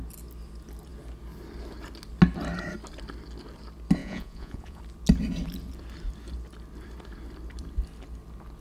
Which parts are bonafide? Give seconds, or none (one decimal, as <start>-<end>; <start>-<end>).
0.0-4.0; 4.8-8.6